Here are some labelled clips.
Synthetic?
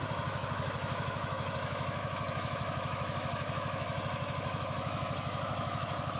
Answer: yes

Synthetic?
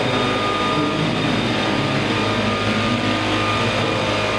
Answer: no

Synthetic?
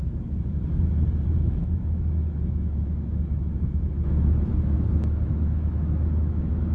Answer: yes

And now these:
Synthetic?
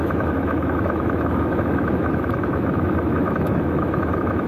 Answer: yes